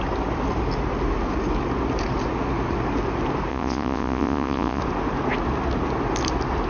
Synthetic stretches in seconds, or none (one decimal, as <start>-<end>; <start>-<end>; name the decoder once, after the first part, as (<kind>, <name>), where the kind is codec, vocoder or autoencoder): 3.5-4.8 (vocoder, Vocos)